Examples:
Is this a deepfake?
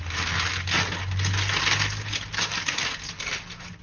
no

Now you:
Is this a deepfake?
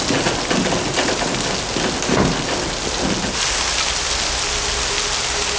no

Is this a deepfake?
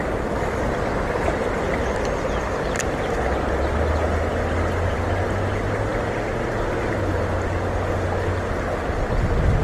no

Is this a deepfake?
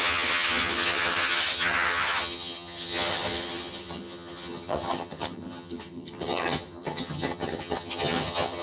yes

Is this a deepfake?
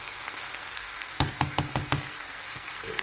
yes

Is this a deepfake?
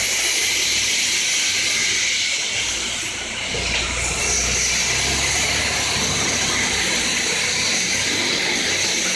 no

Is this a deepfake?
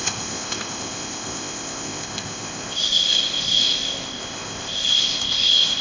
yes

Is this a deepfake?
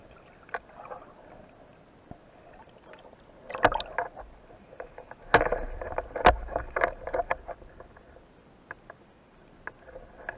no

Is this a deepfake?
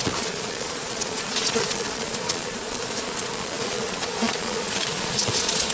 yes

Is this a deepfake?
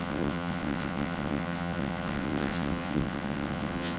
yes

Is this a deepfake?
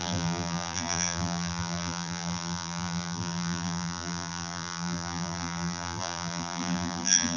yes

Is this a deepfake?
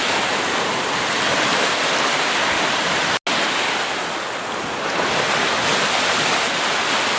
no